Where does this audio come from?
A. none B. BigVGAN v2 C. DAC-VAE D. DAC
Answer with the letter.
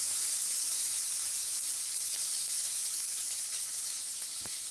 C